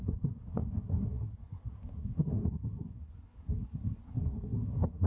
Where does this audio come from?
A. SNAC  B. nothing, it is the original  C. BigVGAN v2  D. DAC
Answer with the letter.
A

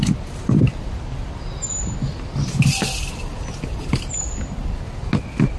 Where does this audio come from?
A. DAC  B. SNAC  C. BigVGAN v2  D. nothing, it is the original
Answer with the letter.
D